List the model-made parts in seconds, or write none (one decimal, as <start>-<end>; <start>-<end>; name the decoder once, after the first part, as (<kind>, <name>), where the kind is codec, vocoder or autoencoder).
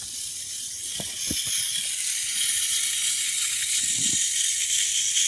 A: 2.2-3.8 (vocoder, Vocos)